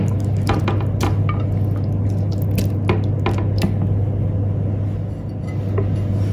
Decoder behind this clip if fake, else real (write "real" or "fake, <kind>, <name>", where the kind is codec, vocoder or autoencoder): real